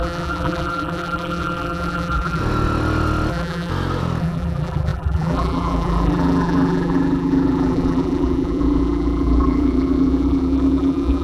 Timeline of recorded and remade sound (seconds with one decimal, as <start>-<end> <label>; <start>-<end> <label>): 0.0-2.4 remade; 2.4-3.3 recorded; 3.3-3.7 remade; 3.7-4.2 recorded; 4.2-11.2 remade